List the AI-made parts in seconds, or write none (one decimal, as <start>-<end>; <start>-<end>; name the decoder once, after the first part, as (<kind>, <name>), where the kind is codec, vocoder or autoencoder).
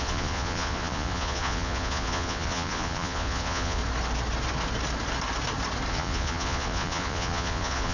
0.0-3.8 (vocoder, Vocos); 5.9-7.9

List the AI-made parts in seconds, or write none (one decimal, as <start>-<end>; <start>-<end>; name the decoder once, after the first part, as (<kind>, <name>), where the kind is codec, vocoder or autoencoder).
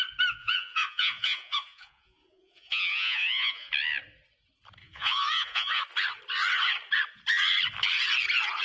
0.4-3.7 (vocoder, Vocos); 4.8-5.8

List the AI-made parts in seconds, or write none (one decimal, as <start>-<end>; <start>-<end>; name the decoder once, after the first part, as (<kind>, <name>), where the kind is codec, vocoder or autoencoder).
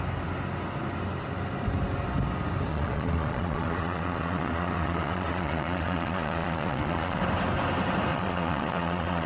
2.7-7.2 (vocoder, Vocos); 8.1-9.3